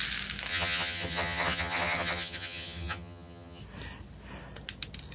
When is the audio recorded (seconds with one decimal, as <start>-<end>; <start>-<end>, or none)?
0.0-0.5; 3.6-5.1